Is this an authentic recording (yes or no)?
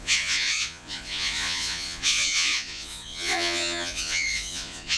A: no